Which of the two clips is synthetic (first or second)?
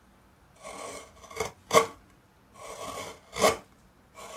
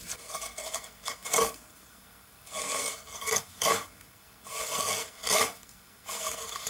second